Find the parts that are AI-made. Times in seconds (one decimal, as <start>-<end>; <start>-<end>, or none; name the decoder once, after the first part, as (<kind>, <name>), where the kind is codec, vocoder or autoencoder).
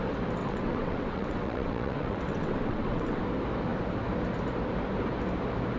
0.4-3.2 (vocoder, WaveNeXt)